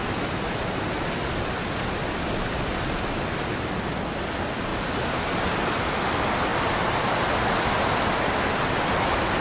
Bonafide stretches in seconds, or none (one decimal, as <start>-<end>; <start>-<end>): 0.0-9.4